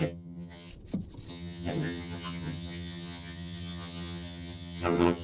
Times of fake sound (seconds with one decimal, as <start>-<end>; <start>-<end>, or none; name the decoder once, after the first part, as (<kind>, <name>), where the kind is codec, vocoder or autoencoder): 0.0-0.7 (vocoder, HiFi-GAN); 1.3-5.2